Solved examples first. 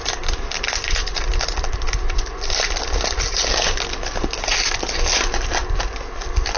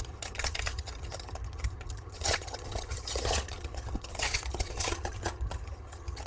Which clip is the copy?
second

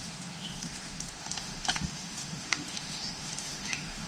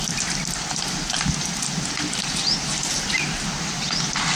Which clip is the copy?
first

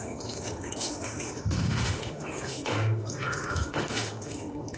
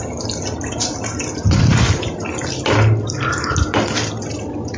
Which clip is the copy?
first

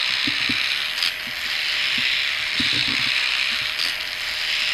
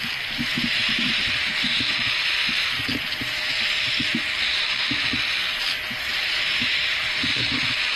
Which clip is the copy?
second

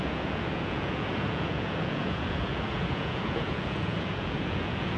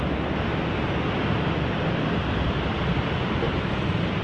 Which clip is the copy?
first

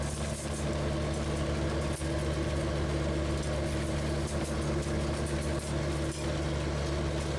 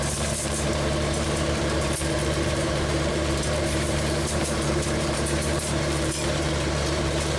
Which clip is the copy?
second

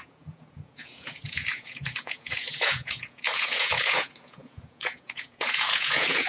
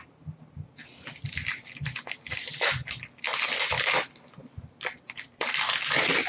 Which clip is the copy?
first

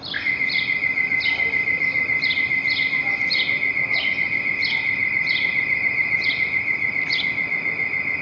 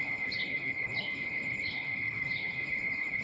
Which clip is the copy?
second